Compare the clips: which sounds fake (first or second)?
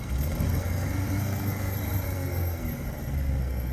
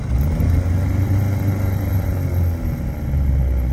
first